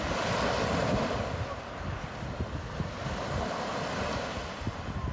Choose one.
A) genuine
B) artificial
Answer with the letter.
A